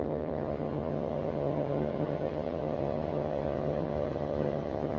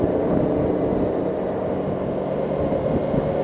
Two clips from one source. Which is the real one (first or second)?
second